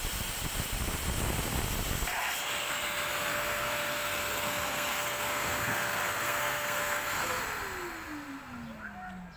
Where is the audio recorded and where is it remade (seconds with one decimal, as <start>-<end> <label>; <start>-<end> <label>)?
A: 0.0-3.3 recorded; 3.3-7.4 remade; 7.4-9.4 recorded